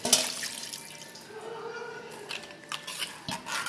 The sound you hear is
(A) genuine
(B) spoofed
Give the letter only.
A